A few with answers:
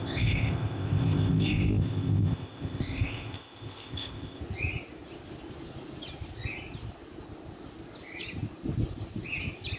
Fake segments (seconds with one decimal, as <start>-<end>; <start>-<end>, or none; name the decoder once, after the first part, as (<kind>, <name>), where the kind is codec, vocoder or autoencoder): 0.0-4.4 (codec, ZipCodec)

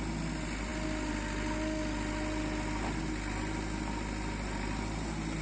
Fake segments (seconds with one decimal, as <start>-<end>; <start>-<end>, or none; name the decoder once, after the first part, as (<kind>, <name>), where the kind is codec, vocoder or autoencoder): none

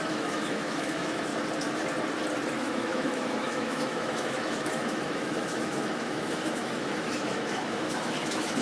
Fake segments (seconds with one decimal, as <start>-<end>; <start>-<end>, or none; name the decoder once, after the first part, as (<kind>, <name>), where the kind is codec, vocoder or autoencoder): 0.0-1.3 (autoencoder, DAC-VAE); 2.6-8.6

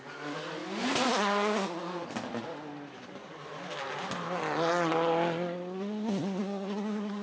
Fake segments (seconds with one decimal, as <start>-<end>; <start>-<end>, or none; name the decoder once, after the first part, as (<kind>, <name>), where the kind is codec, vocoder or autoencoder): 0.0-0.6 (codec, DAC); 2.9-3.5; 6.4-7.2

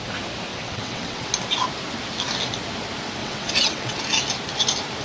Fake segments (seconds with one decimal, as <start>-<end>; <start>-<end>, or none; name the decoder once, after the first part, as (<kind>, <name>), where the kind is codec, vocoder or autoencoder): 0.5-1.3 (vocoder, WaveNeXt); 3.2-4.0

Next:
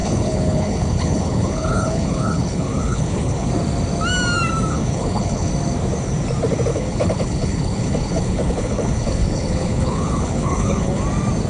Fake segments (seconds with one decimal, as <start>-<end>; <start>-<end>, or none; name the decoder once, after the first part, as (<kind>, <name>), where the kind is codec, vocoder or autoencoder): 0.0-3.5 (codec, HILCodec); 4.7-5.5; 6.7-11.0

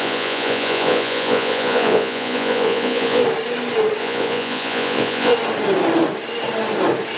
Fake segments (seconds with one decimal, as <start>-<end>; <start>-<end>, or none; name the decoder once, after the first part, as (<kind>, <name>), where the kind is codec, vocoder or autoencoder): 0.0-3.2 (vocoder, Vocos); 4.0-5.3